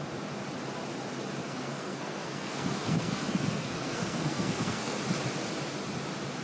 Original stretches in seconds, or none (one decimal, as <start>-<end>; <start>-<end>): 0.0-1.4; 5.0-6.4